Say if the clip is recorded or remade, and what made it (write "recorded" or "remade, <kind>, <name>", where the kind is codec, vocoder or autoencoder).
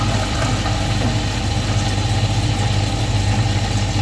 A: recorded